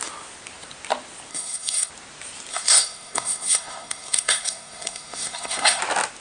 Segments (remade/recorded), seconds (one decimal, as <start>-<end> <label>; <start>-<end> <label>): 0.0-1.3 recorded; 1.3-1.9 remade; 1.9-2.5 recorded; 2.5-5.8 remade; 5.8-6.2 recorded